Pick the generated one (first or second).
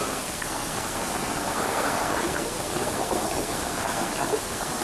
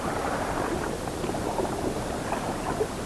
first